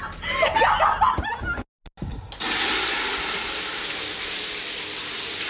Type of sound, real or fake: real